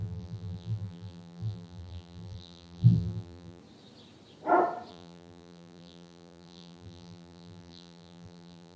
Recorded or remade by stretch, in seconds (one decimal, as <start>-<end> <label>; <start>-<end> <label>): 0.0-3.6 remade; 3.6-4.9 recorded; 4.9-8.8 remade